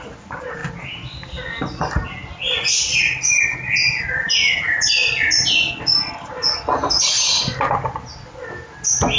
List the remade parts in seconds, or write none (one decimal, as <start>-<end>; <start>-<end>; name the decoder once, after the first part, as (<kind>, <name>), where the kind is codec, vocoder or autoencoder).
none